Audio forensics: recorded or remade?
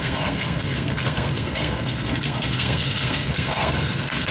remade